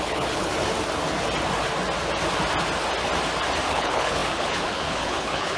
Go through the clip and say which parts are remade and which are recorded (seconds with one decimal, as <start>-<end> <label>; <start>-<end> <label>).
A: 0.0-0.5 remade; 0.5-3.7 recorded; 3.7-5.6 remade